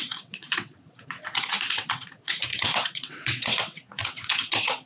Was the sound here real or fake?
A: fake